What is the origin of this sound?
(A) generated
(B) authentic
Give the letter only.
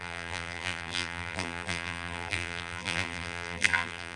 A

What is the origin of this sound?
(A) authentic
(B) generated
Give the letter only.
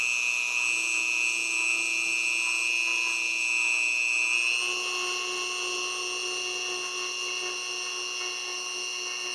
A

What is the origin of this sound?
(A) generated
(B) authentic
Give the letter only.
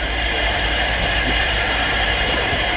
A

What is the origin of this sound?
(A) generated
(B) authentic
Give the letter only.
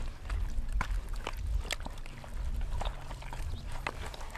B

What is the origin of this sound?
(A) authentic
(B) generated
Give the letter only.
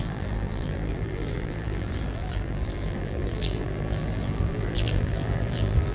B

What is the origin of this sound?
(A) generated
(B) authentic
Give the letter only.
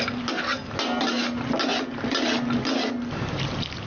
B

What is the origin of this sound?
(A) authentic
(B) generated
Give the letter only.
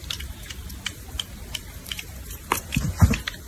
B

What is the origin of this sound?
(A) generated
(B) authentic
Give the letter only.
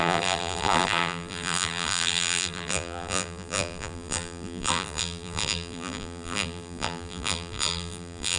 A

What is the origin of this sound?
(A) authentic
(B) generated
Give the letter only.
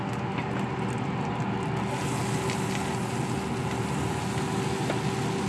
A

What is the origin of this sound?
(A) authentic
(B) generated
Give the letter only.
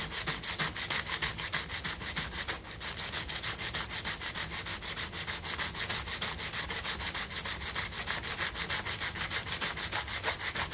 A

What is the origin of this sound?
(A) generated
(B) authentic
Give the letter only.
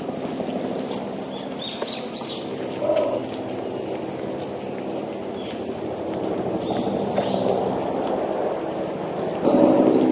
B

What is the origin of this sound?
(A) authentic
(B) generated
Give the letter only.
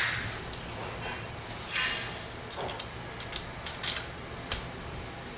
A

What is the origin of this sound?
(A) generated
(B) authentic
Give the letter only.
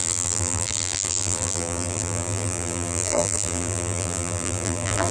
A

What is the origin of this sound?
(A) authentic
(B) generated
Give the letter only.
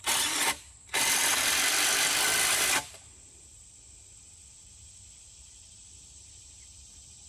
B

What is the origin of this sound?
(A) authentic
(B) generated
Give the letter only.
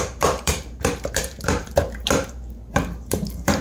B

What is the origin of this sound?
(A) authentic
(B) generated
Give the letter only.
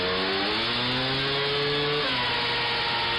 A